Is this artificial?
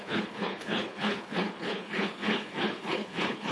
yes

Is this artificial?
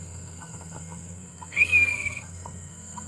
yes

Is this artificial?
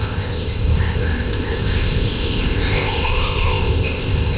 yes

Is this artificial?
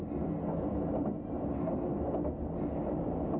no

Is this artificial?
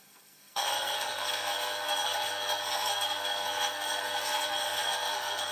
yes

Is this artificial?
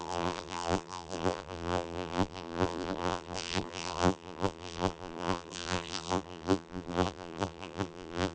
yes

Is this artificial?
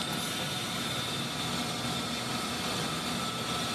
no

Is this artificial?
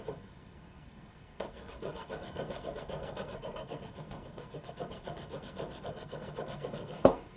yes